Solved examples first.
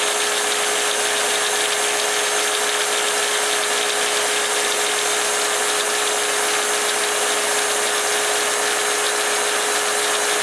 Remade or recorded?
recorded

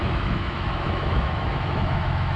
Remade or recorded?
remade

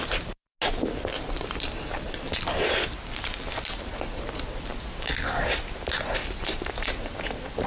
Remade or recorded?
recorded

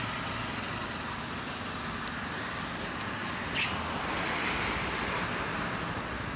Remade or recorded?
recorded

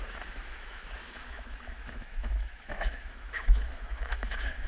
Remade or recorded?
remade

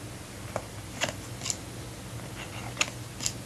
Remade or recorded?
recorded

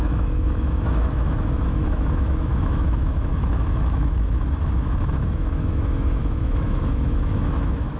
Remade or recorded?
remade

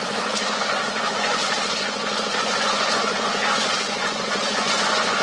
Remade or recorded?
remade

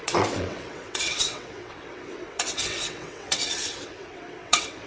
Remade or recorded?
remade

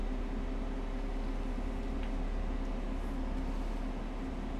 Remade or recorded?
recorded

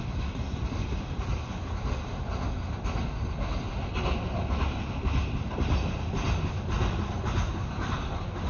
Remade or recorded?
recorded